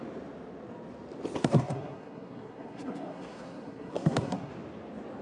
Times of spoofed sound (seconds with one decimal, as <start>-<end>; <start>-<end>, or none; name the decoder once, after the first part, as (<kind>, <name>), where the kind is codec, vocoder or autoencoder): 1.4-4.5 (codec, SNAC)

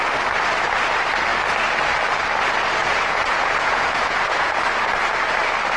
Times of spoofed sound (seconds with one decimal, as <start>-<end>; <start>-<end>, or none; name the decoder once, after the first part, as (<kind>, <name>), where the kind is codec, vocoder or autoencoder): 2.8-4.6 (vocoder, Vocos)

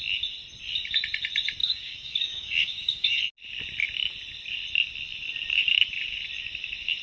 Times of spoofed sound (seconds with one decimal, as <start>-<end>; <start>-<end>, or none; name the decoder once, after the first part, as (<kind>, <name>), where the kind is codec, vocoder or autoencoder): 1.6-3.2 (codec, DAC)

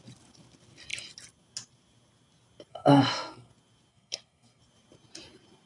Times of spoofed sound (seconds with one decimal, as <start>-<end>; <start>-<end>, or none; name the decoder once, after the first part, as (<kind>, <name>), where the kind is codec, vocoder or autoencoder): 2.7-3.5 (codec, SNAC); 3.9-4.6

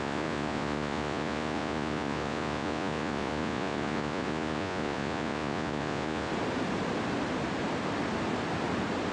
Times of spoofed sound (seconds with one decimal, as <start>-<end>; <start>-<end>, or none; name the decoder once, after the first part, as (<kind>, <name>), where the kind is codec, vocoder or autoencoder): 0.0-6.3 (vocoder, Vocos)

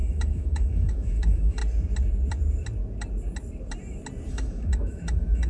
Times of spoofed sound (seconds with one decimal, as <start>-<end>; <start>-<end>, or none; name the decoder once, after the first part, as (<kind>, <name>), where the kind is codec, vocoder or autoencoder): 0.0-1.6 (autoencoder, DAC-VAE); 4.3-5.5

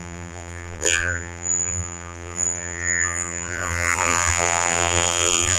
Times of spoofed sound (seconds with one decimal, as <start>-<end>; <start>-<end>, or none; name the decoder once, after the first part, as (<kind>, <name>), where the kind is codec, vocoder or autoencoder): 0.0-5.6 (vocoder, BigVGAN v2)

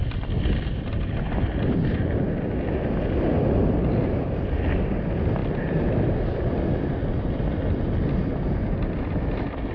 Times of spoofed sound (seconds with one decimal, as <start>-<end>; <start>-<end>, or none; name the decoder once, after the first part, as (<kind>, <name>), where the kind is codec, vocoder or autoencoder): none